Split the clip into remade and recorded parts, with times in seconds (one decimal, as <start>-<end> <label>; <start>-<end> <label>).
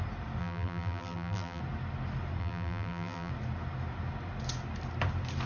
0.0-0.4 recorded; 0.4-1.6 remade; 1.6-2.4 recorded; 2.4-3.3 remade; 3.3-5.5 recorded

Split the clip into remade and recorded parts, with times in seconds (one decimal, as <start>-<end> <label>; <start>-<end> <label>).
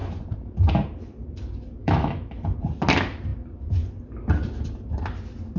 0.0-1.8 recorded; 1.8-2.3 remade; 2.3-5.6 recorded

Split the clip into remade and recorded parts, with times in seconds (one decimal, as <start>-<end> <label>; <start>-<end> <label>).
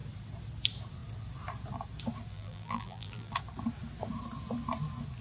0.0-2.3 recorded; 2.3-3.3 remade; 3.3-5.2 recorded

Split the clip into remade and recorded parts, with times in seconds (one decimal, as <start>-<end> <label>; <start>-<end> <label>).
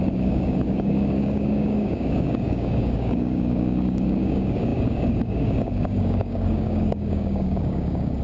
0.0-8.2 remade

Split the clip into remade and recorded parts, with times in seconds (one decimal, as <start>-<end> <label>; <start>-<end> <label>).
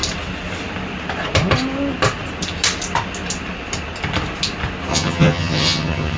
0.0-4.9 recorded; 4.9-6.2 remade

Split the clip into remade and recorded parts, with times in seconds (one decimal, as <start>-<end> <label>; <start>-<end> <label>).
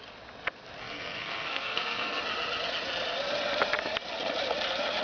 0.0-0.8 recorded; 0.8-2.2 remade; 2.2-5.0 recorded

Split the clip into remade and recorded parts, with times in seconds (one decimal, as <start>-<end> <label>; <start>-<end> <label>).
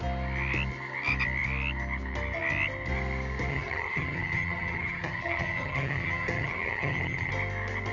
0.0-3.5 recorded; 3.5-7.3 remade; 7.3-7.9 recorded